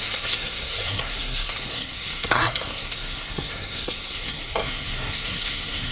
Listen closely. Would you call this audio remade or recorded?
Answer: remade